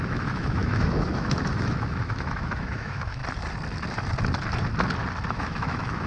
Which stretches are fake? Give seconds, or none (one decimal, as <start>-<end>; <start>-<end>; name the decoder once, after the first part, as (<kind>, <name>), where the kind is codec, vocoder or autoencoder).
0.0-3.2 (autoencoder, DAC-VAE); 5.3-6.1